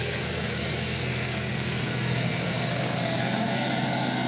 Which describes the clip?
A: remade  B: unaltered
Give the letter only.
A